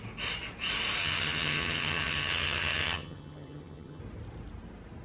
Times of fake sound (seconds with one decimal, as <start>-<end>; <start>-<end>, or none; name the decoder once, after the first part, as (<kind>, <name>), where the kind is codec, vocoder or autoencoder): 1.0-4.0 (vocoder, HiFi-GAN)